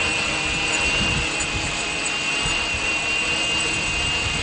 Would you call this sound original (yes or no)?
no